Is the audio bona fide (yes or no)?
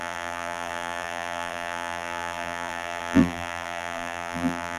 no